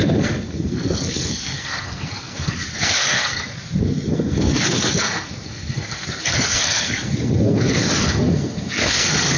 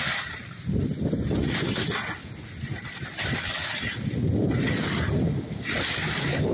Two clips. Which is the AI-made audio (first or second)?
first